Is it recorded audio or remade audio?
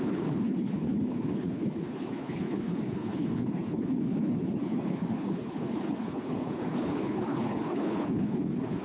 remade